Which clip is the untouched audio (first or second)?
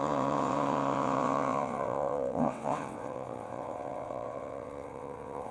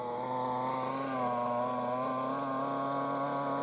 second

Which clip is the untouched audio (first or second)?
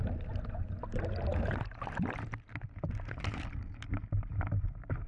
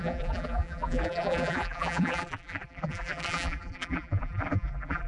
first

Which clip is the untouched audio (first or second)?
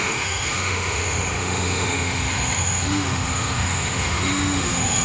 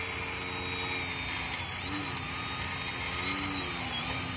second